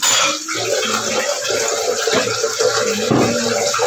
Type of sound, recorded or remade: recorded